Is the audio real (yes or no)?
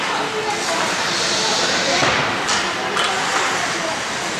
yes